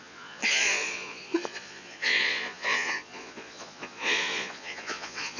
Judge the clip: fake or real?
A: fake